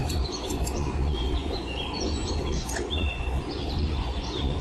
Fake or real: fake